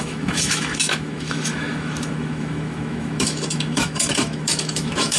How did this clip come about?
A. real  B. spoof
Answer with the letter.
B